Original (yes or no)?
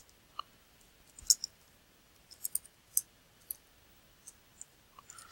yes